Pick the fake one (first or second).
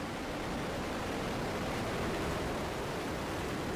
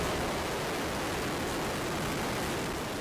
first